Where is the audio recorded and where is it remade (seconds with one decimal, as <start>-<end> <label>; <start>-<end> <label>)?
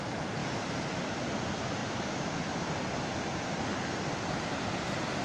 0.0-0.4 recorded; 0.4-1.0 remade; 1.0-1.8 recorded; 1.8-5.2 remade